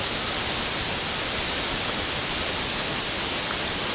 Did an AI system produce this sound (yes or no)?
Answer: no